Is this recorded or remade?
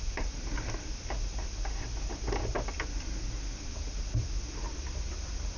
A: recorded